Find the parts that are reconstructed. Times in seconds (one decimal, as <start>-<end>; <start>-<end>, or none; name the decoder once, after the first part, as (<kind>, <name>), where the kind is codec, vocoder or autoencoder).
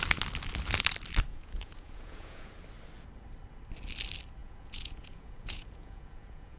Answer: 1.3-2.5 (vocoder, Vocos); 4.4-6.6